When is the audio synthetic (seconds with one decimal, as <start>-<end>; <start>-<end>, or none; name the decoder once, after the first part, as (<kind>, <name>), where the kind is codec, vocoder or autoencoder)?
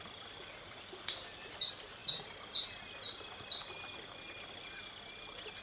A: none